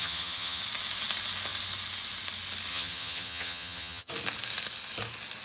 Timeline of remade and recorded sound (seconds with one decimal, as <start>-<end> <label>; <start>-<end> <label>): 0.0-0.6 remade; 0.6-2.7 recorded; 2.7-4.1 remade; 4.1-5.4 recorded

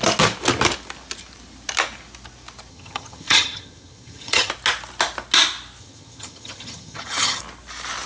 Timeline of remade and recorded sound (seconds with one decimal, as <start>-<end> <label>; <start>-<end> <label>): 0.0-2.7 recorded; 2.7-4.5 remade; 4.5-5.8 recorded; 5.8-7.4 remade; 7.4-8.1 recorded

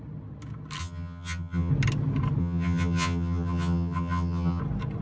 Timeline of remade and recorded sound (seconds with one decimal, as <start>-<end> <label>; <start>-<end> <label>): 0.0-0.8 recorded; 0.8-1.7 remade; 1.7-2.4 recorded; 2.4-4.6 remade; 4.6-5.0 recorded

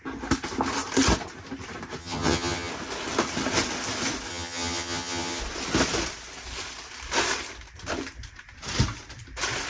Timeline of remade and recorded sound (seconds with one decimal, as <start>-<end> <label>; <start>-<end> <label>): 0.0-2.0 recorded; 2.0-2.7 remade; 2.7-4.3 recorded; 4.3-5.4 remade; 5.4-9.7 recorded

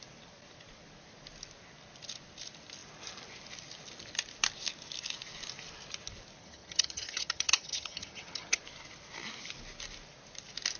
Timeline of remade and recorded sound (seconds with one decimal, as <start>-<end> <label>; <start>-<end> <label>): 0.0-6.4 recorded; 6.4-8.6 remade; 8.6-10.8 recorded

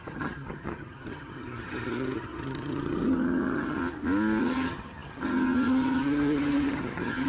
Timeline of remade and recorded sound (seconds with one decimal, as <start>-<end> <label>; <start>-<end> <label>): 0.0-3.8 remade; 3.8-4.4 recorded; 4.4-7.3 remade

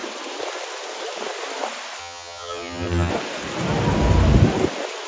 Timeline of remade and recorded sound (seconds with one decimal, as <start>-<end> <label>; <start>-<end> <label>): 0.0-2.0 recorded; 2.0-3.1 remade; 3.1-5.1 recorded